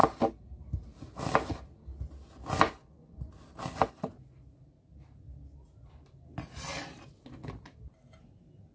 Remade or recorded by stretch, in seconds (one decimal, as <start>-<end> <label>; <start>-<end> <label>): 0.0-2.8 recorded; 2.8-3.3 remade; 3.3-8.7 recorded